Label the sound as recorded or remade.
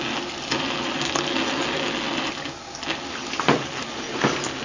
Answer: recorded